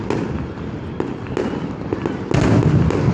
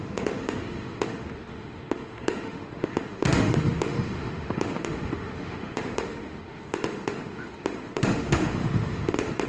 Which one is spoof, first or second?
second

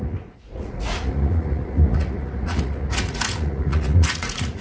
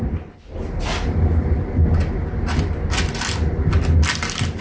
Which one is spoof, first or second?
first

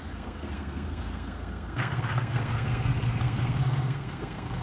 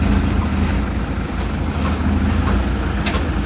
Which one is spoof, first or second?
first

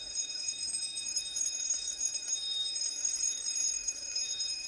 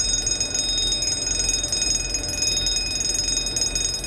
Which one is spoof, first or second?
first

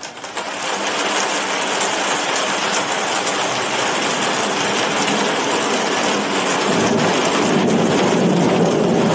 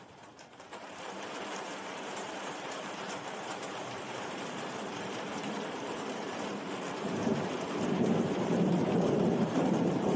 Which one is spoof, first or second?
second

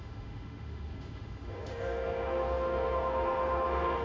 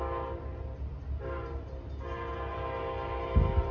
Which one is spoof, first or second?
first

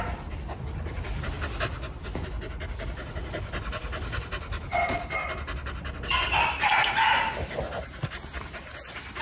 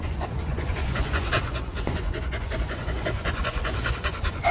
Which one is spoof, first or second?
second